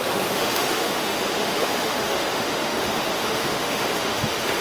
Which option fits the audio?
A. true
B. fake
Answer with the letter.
B